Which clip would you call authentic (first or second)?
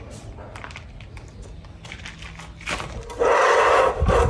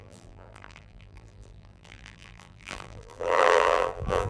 first